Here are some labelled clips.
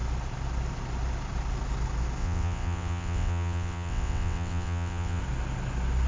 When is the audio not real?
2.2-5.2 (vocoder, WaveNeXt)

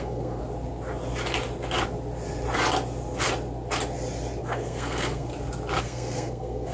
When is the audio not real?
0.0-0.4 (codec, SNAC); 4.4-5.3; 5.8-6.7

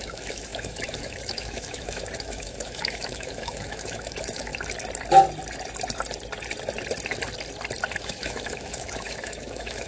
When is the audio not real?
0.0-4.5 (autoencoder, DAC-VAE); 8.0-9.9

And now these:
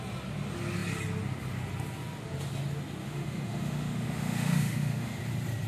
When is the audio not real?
3.0-5.2 (autoencoder, DAC-VAE)

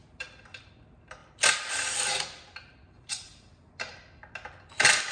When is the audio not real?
0.0-0.7 (vocoder, BigVGAN v2); 1.2-4.3